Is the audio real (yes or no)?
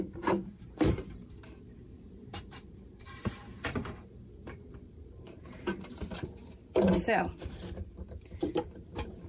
no